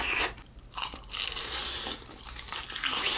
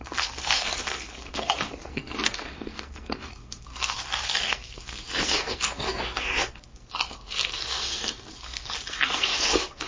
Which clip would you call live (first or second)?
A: first